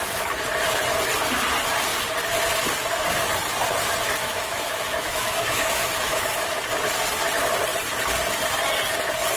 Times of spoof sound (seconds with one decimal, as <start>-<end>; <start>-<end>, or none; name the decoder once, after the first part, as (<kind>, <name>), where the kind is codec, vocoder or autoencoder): 4.2-6.6 (autoencoder, DAC-VAE)